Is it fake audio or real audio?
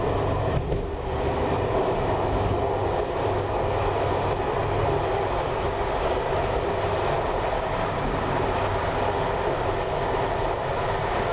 real